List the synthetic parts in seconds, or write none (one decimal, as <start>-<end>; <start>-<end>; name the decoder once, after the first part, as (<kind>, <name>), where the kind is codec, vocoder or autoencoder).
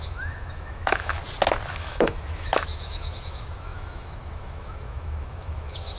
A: 0.0-1.2 (autoencoder, DAC-VAE); 1.7-6.0